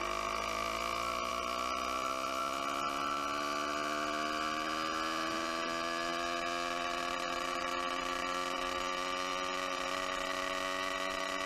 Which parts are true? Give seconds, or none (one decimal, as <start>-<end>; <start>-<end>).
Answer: 0.0-11.5